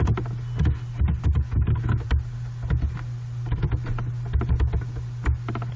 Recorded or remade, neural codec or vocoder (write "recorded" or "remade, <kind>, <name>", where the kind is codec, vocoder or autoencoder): recorded